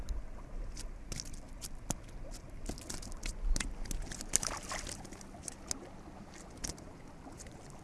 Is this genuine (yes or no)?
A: yes